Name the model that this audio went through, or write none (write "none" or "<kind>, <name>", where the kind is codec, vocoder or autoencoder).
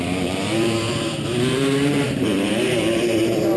vocoder, BigVGAN v2